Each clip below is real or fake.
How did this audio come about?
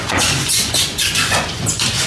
fake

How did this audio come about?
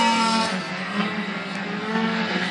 fake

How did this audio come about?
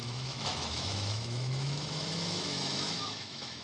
fake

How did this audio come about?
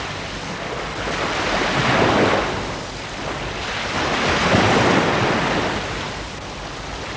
real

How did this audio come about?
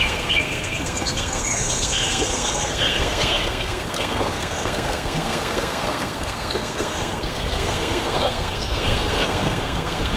fake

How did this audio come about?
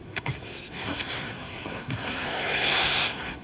fake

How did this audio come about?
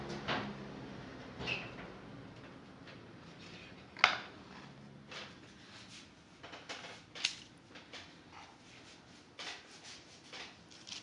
real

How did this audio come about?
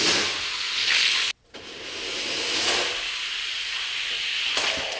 real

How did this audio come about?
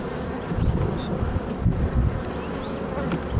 real